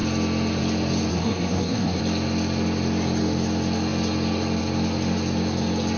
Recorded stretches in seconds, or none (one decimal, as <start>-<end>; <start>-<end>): 0.0-1.1; 2.0-6.0